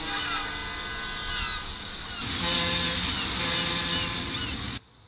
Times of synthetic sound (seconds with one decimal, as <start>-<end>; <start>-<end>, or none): none